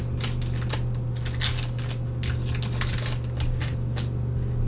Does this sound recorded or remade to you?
recorded